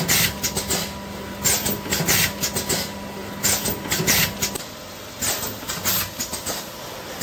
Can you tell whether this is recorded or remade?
recorded